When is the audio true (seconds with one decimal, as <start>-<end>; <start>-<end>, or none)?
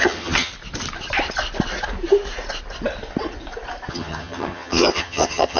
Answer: 0.5-3.9